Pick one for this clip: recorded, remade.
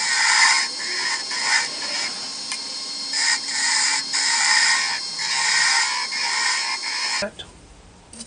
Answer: remade